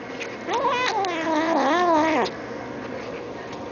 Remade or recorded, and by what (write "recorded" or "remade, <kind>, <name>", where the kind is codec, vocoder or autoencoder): recorded